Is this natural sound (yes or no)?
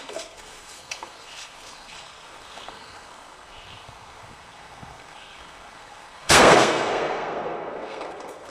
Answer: no